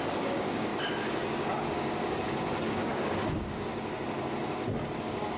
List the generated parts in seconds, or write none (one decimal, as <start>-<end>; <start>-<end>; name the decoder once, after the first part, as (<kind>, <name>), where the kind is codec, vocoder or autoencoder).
0.0-0.7 (codec, DAC); 1.6-3.7; 5.0-5.4